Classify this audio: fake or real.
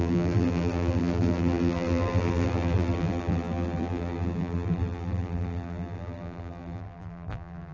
fake